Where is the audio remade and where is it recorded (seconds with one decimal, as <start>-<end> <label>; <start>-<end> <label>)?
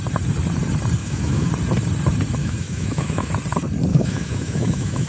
0.0-1.0 recorded; 1.0-1.5 remade; 1.5-2.4 recorded; 2.4-3.3 remade; 3.3-3.9 recorded; 3.9-5.1 remade